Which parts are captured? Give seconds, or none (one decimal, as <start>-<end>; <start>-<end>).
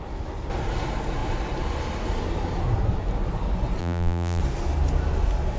0.0-3.8; 4.4-5.6